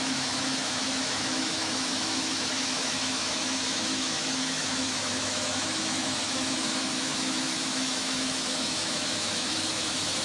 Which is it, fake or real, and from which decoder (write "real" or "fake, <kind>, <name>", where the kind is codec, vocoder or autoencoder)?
fake, autoencoder, DAC-VAE